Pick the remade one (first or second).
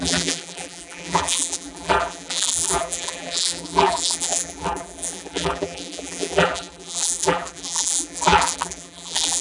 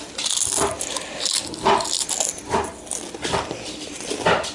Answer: first